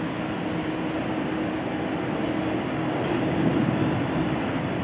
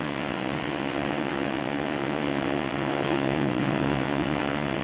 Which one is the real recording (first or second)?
first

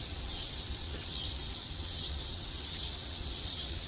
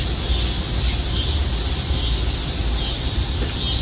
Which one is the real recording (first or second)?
second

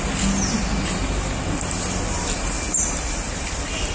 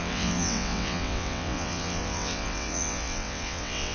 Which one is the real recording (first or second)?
first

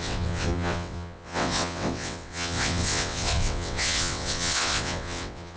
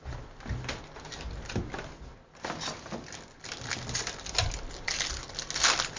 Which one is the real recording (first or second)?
second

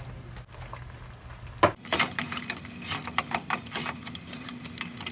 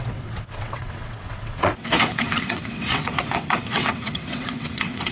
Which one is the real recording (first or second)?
first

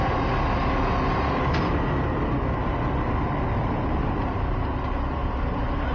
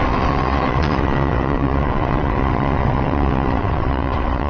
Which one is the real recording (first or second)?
first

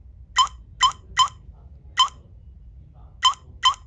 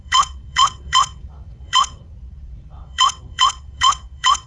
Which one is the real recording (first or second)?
first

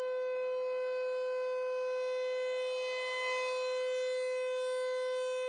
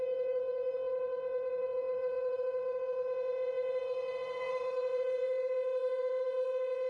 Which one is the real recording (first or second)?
first